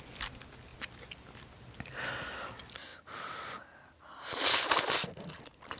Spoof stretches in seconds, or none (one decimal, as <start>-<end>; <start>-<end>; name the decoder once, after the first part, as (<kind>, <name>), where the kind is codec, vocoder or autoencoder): none